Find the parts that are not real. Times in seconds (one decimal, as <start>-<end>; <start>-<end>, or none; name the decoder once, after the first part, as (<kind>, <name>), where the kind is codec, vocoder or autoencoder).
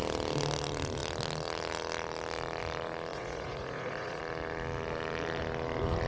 3.1-4.2 (vocoder, Vocos)